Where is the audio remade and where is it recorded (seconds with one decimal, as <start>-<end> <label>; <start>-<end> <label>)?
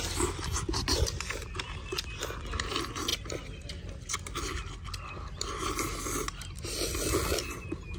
0.0-8.0 recorded